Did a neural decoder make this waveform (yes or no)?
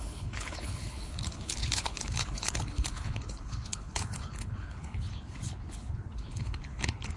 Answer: yes